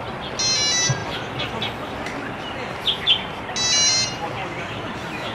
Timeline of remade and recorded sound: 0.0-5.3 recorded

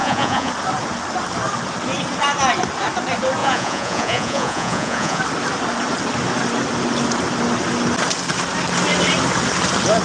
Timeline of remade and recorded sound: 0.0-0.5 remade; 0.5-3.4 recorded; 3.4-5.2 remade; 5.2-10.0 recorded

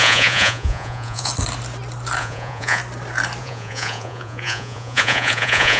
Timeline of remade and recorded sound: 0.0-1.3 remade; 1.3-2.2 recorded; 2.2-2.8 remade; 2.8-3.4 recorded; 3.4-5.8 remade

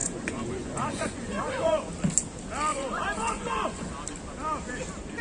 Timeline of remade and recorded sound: 0.0-1.9 remade; 1.9-2.7 recorded; 2.7-3.9 remade; 3.9-5.2 recorded

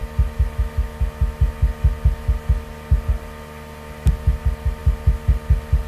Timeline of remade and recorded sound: 0.0-5.9 recorded

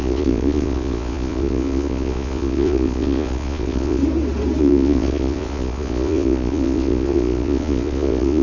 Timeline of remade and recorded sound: 0.0-4.0 remade; 4.0-4.6 recorded; 4.6-8.4 remade